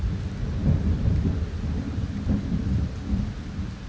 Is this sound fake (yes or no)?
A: no